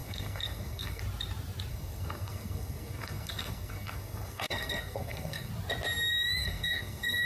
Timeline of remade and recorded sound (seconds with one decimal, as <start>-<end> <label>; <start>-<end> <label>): 0.0-1.0 remade; 1.0-1.7 recorded; 1.7-5.5 remade; 5.5-6.4 recorded; 6.4-7.3 remade